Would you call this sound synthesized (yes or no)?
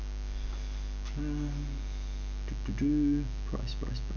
no